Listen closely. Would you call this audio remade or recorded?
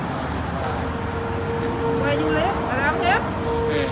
recorded